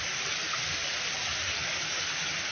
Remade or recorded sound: recorded